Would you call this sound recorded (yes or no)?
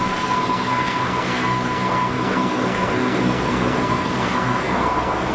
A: no